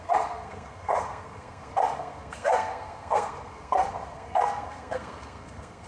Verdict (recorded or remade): remade